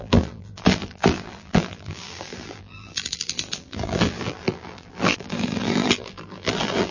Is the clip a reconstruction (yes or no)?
yes